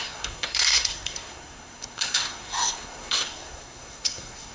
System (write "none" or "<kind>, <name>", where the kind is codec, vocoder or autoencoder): codec, SNAC